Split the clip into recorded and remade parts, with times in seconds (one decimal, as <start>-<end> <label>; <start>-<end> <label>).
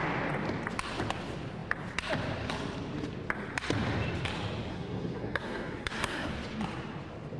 0.0-4.7 recorded; 4.7-6.3 remade; 6.3-7.4 recorded